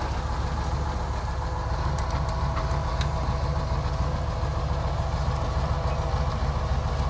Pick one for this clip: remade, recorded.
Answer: recorded